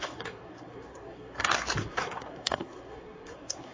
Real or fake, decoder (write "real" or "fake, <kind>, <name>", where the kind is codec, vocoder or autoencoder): fake, codec, SNAC